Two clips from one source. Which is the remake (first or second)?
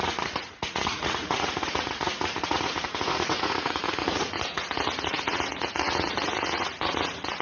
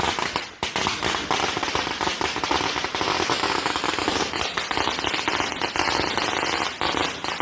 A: first